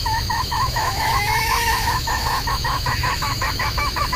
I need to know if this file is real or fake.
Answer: fake